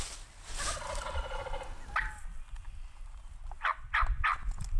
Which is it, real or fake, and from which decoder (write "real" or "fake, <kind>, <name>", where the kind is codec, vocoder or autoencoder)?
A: real